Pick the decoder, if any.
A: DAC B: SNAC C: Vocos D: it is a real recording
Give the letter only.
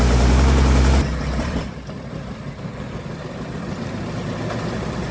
D